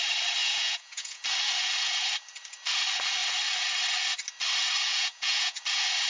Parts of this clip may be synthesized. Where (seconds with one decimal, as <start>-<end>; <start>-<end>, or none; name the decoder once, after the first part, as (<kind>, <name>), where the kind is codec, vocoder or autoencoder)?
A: 0.4-1.2 (vocoder, Vocos); 4.9-5.6